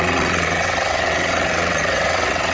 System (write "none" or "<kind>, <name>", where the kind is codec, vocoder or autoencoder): vocoder, WaveNeXt